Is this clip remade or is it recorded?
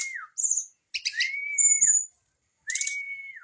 recorded